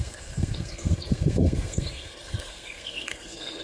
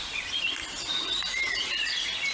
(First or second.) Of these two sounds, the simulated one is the first